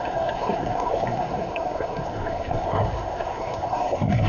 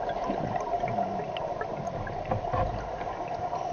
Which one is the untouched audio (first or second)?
second